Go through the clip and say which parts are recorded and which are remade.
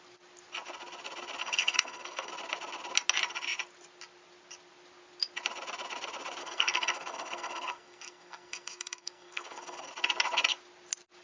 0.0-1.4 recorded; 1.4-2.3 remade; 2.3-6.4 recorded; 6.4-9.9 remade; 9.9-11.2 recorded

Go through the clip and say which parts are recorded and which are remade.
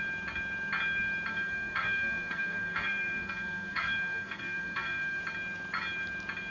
0.0-1.3 recorded; 1.3-5.2 remade; 5.2-6.5 recorded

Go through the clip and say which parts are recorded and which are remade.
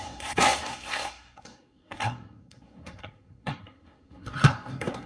0.0-5.1 remade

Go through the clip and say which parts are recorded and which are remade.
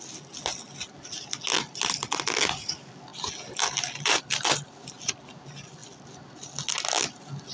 0.0-7.5 recorded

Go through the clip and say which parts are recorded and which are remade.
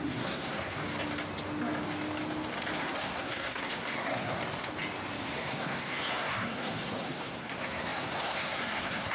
0.0-0.8 remade; 0.8-2.8 recorded; 2.8-4.4 remade; 4.4-5.3 recorded; 5.3-9.1 remade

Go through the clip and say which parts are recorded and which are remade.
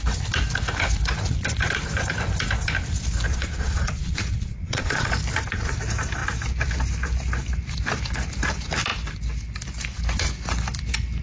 0.0-3.3 recorded; 3.3-5.1 remade; 5.1-11.2 recorded